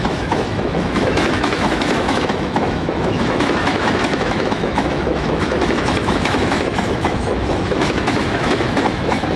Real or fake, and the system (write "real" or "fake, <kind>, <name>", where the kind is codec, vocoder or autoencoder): fake, autoencoder, DAC-VAE